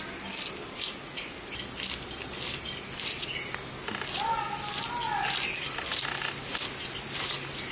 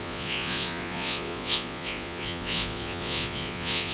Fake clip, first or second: second